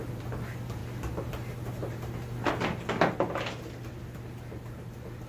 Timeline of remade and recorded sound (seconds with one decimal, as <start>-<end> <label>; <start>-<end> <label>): 0.0-5.3 recorded

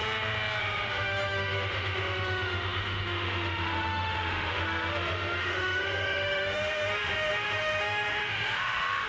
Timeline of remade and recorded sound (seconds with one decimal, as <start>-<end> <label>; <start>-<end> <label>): 0.0-0.6 recorded; 0.6-9.1 remade